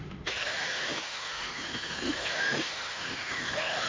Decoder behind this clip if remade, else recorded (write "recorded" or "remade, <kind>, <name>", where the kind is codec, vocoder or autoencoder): remade, autoencoder, DAC-VAE